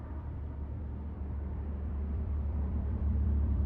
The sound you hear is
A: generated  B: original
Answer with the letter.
A